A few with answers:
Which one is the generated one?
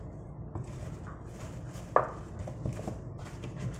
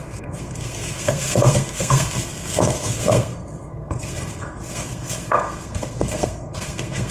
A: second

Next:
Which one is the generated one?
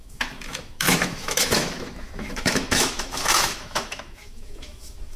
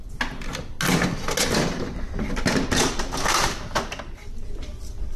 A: first